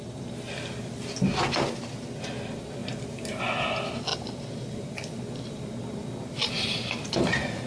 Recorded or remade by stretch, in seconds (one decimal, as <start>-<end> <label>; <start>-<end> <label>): 0.0-2.8 recorded; 2.8-3.4 remade; 3.4-4.1 recorded; 4.1-7.7 remade

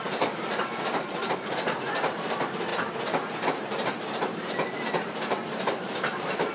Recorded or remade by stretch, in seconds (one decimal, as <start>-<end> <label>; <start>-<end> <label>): 0.0-2.7 remade; 2.7-3.3 recorded; 3.3-6.5 remade

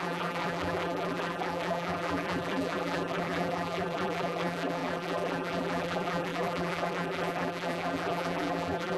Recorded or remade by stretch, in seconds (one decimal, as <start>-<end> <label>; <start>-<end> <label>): 0.0-9.0 remade